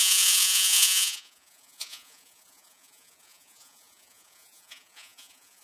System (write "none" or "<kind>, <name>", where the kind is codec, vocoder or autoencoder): vocoder, Vocos